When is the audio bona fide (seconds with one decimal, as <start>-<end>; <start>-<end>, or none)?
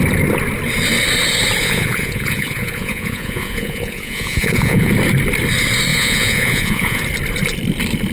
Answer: 0.0-1.6; 4.9-5.9; 7.0-8.1